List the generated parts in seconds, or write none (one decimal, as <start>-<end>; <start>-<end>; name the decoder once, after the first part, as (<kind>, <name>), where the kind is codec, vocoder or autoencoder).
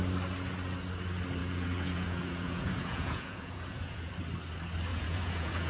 1.4-4.1 (vocoder, Vocos); 4.9-5.7